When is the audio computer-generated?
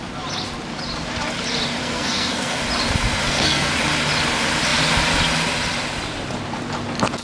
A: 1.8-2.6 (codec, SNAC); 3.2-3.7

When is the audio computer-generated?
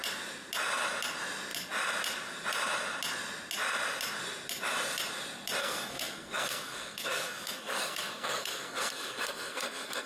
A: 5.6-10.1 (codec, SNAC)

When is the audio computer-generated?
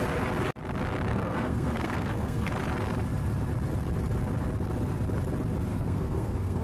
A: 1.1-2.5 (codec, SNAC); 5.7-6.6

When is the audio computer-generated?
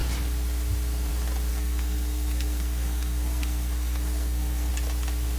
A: 1.5-4.7 (codec, SNAC)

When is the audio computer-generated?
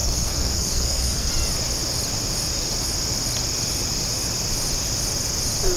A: 0.0-1.3 (codec, SNAC)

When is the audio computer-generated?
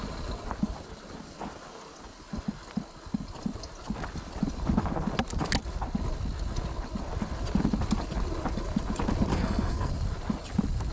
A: 9.3-9.9 (codec, SNAC)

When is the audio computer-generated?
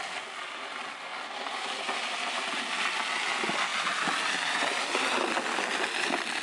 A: none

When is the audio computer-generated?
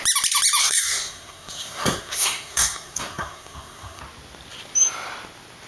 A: 0.6-4.0 (codec, SNAC)